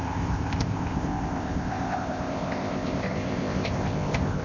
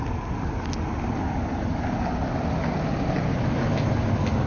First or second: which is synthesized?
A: first